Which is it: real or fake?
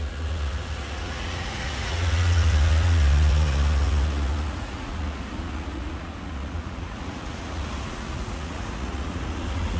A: fake